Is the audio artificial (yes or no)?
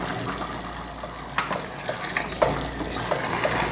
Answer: no